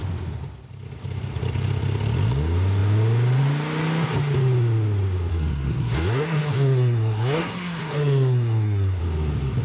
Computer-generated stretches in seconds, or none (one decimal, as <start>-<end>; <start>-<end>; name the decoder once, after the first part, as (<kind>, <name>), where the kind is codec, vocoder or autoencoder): 5.3-9.0 (codec, SNAC)